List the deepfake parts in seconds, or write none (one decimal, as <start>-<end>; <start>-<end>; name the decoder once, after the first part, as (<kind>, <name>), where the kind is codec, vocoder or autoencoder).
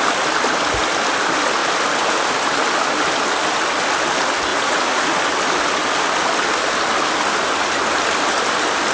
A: 4.5-5.2 (vocoder, Vocos)